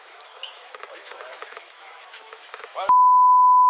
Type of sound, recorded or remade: remade